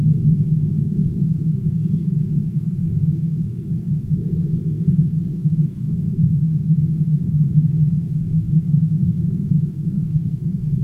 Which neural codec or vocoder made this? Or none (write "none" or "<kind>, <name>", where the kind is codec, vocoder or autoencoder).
codec, SNAC